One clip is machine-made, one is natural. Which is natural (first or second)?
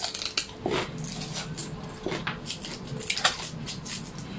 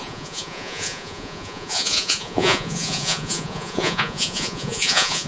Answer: first